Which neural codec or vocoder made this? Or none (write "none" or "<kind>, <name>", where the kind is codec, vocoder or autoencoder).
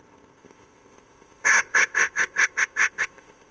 codec, ZipCodec